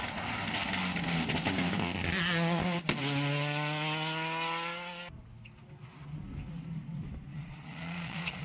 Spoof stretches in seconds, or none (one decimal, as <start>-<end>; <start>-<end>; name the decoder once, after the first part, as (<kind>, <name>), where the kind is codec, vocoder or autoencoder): 7.3-8.4 (vocoder, Vocos)